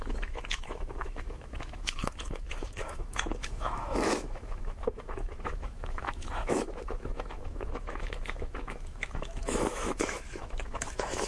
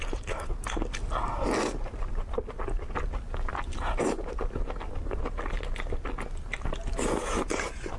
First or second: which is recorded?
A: second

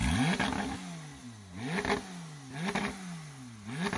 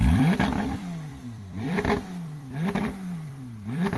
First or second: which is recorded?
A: first